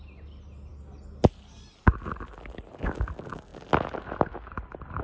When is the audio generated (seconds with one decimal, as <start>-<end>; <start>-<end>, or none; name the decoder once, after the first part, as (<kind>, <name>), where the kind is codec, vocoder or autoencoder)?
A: none